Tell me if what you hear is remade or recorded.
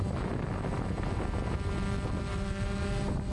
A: recorded